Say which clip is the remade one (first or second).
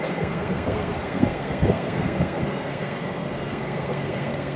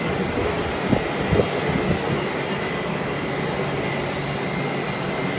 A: first